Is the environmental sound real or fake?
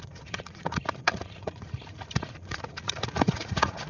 fake